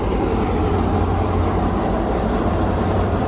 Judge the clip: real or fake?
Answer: fake